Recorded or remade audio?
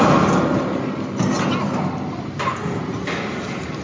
recorded